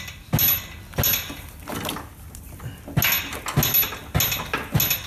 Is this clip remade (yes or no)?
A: no